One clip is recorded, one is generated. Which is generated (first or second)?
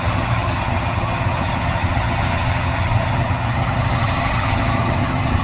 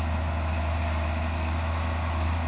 first